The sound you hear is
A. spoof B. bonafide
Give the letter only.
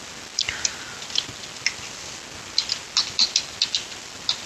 B